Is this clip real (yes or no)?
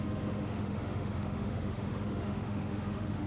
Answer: no